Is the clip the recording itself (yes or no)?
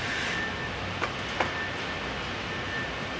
yes